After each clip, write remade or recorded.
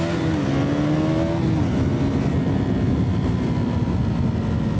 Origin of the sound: recorded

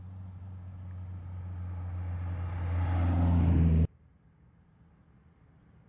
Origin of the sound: recorded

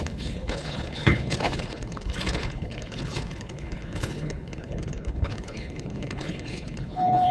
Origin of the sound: remade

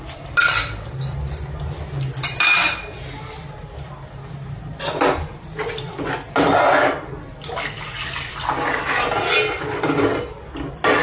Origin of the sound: recorded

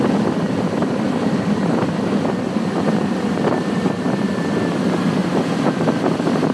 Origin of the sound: remade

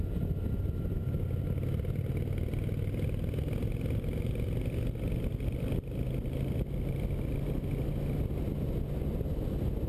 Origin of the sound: recorded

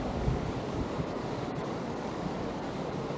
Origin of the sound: remade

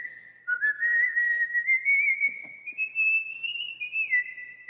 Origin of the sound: remade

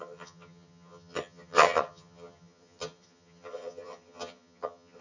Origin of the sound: remade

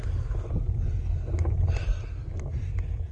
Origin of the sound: recorded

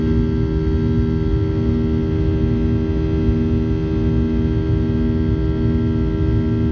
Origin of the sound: recorded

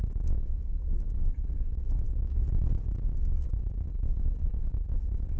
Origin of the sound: recorded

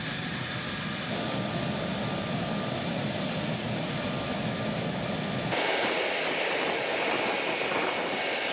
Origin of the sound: recorded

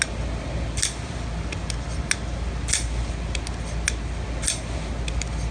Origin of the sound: recorded